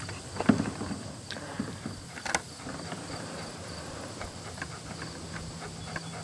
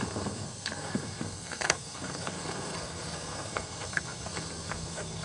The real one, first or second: first